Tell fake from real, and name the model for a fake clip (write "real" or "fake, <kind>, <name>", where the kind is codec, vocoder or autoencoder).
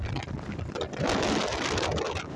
real